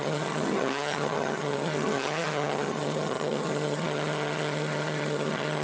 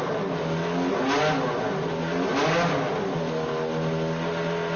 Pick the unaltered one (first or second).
second